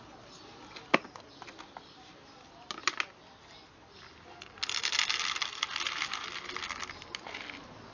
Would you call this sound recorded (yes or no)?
yes